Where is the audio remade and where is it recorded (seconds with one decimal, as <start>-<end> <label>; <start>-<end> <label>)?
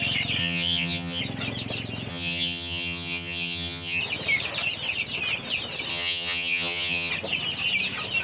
0.0-0.4 recorded; 0.4-1.2 remade; 1.2-2.1 recorded; 2.1-4.0 remade; 4.0-5.9 recorded; 5.9-7.1 remade; 7.1-8.2 recorded